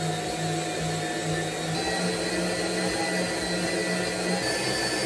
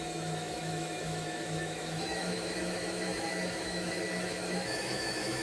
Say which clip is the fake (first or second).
second